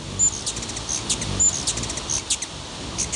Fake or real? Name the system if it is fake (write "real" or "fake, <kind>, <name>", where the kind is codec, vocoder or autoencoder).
real